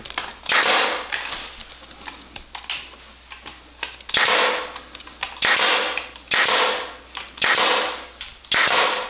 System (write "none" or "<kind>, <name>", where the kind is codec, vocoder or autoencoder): none